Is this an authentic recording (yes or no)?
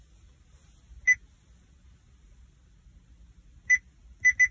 yes